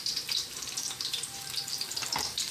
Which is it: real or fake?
fake